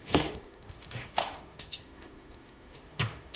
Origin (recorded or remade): remade